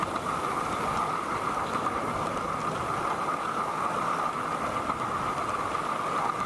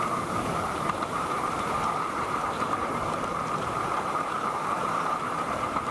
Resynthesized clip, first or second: second